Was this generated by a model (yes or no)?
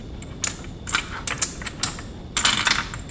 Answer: no